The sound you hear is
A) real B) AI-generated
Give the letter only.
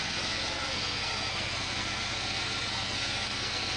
B